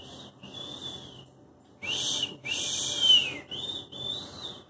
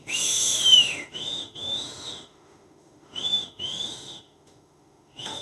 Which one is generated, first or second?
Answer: second